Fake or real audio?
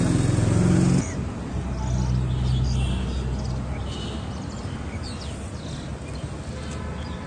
real